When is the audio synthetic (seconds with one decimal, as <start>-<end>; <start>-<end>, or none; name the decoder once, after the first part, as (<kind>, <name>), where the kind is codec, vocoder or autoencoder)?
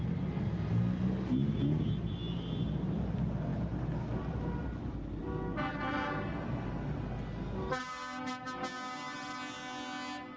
none